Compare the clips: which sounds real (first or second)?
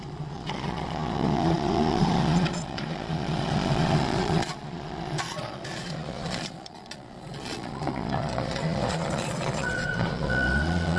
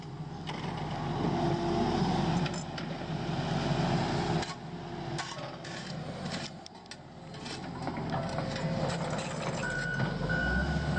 second